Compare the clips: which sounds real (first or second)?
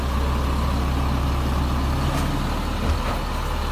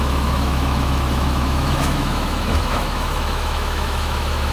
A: first